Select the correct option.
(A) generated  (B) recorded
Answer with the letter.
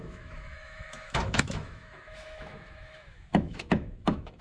A